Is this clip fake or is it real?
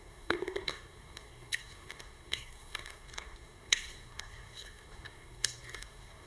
fake